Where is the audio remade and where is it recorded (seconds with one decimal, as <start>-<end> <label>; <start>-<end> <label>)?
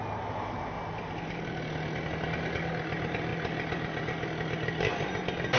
0.0-5.6 recorded